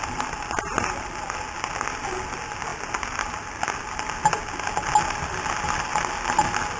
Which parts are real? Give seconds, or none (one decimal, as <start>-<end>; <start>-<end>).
0.0-6.8